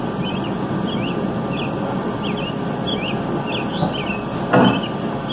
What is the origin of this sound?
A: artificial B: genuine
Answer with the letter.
B